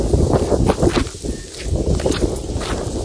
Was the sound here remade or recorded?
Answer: recorded